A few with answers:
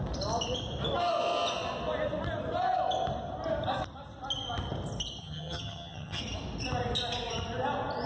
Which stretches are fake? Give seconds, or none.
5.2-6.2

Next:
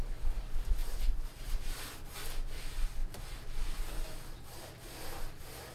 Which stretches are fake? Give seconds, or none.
0.8-1.8; 3.0-3.8

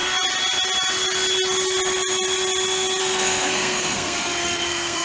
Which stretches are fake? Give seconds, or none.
3.0-5.0

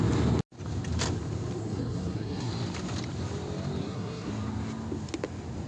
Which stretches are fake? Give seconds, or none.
1.6-2.5; 3.8-4.3

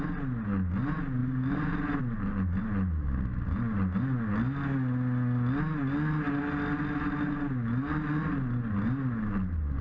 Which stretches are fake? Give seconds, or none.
none